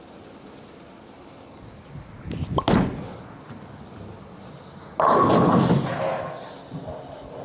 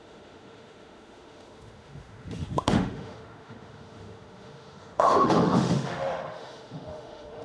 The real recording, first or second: first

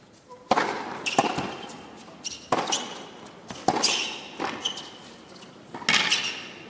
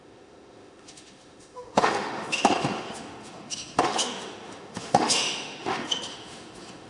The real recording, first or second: first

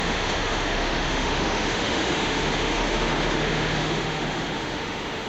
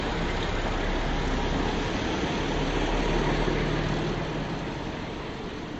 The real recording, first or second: second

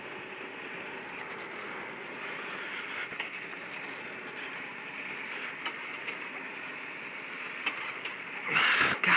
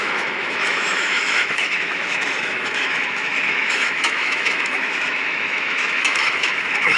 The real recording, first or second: first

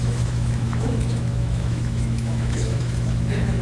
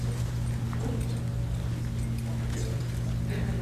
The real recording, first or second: second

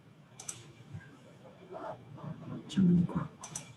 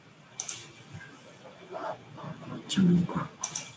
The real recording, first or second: second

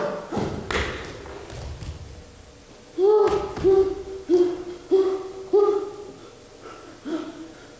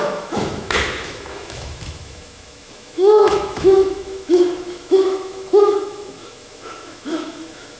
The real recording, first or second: first